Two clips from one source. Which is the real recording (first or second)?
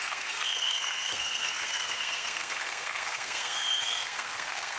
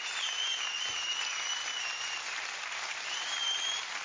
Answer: second